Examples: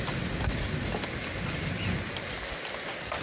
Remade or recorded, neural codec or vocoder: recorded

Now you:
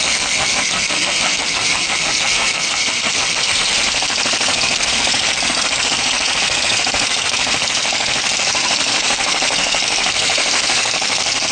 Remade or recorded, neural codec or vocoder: remade, codec, SNAC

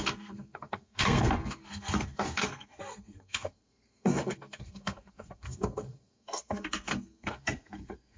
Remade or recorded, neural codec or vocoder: remade, codec, SNAC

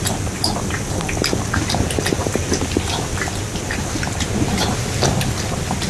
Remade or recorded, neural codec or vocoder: recorded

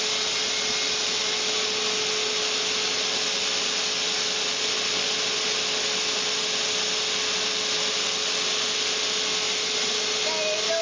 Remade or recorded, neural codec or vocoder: recorded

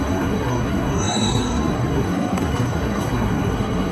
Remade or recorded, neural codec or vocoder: remade, codec, SNAC